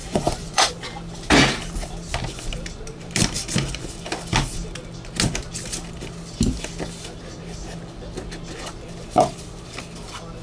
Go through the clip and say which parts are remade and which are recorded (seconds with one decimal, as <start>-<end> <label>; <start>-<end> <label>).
0.0-0.7 remade; 0.7-10.4 recorded